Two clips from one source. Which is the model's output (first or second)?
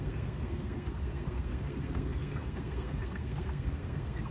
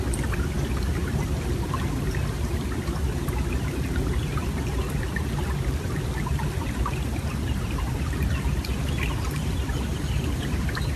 first